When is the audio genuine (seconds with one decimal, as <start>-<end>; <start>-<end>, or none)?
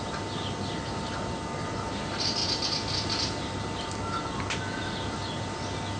0.0-6.0